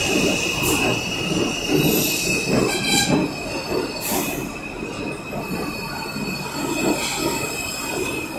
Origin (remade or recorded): recorded